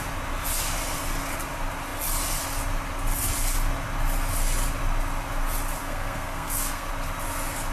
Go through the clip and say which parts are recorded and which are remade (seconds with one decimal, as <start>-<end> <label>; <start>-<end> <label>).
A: 0.0-5.8 recorded; 5.8-6.9 remade; 6.9-7.7 recorded